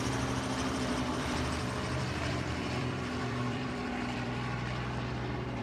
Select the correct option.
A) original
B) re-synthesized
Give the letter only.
B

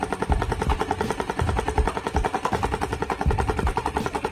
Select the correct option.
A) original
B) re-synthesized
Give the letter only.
A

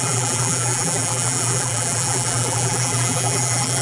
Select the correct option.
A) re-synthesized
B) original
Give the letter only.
A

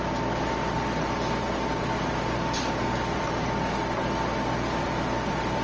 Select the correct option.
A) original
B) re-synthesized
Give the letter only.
A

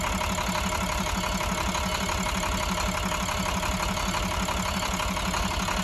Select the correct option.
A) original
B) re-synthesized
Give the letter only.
A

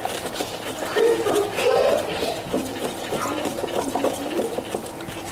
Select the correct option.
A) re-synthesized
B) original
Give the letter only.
B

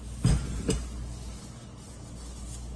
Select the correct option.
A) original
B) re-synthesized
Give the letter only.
A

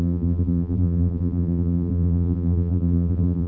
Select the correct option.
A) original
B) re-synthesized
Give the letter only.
B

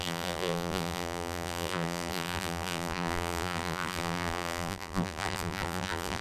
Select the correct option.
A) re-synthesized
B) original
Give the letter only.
A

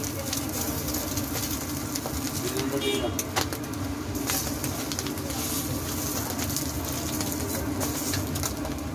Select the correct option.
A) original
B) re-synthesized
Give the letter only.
A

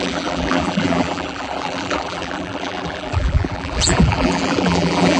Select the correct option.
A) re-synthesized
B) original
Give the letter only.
A